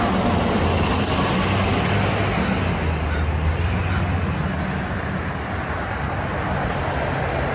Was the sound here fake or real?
real